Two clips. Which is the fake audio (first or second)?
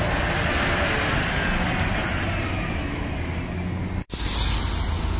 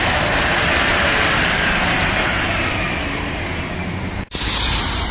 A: second